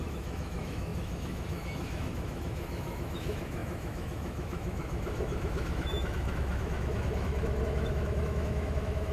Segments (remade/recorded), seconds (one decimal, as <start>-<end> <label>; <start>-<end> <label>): 0.0-9.1 remade